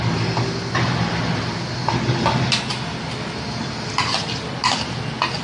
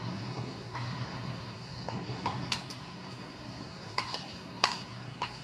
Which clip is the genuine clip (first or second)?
first